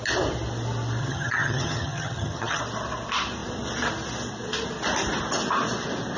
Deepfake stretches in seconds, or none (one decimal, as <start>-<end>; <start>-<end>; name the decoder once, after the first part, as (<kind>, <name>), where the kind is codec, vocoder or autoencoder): 1.0-2.6 (vocoder, HiFi-GAN)